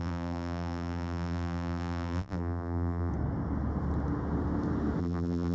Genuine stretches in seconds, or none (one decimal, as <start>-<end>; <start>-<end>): 3.1-5.0